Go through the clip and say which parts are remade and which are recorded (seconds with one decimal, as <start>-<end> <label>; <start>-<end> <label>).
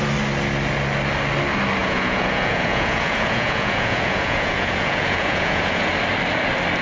0.0-1.8 recorded; 1.8-5.9 remade; 5.9-6.8 recorded